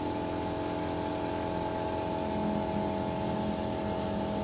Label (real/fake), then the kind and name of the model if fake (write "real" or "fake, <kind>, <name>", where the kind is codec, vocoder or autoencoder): real